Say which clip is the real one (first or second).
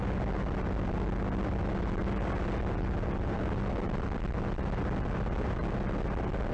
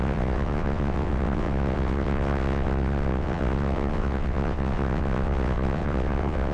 first